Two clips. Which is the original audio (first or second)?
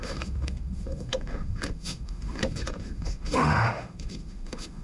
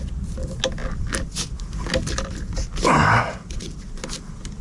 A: second